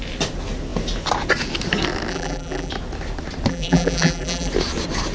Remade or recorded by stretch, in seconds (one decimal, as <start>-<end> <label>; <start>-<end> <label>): 0.0-2.1 recorded; 2.1-2.7 remade; 2.7-3.5 recorded; 3.5-4.5 remade; 4.5-5.1 recorded